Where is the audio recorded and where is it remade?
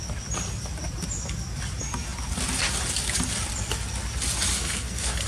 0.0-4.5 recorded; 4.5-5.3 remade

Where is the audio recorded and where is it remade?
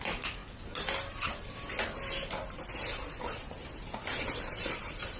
0.0-5.2 recorded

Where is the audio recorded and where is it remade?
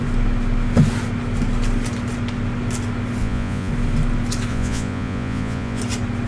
0.0-3.2 recorded; 3.2-3.7 remade; 3.7-4.5 recorded; 4.5-5.8 remade; 5.8-6.3 recorded